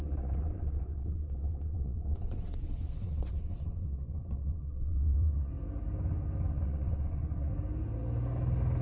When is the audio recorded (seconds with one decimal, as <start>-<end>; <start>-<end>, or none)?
5.5-6.5; 7.5-8.8